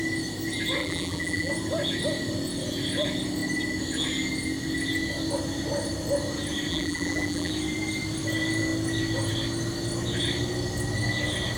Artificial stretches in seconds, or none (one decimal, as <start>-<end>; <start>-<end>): 0.8-1.5; 6.7-7.5